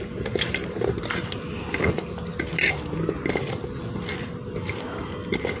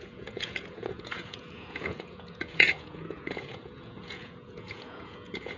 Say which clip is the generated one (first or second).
second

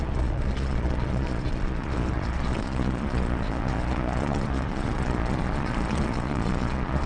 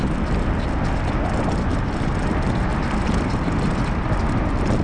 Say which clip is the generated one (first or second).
first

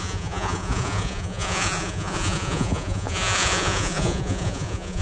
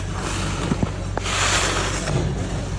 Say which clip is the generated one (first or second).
first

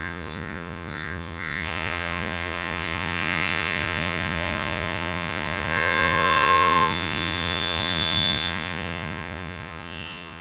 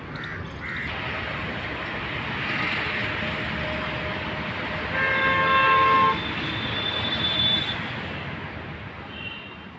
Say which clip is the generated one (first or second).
first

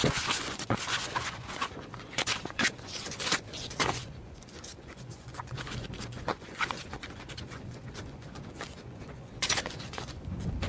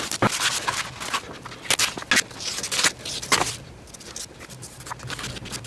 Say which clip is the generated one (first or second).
first